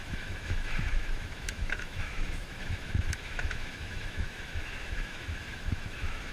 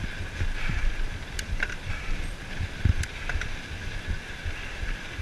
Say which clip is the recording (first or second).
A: second